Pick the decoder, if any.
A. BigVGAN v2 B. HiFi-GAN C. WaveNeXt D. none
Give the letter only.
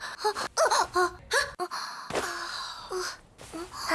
D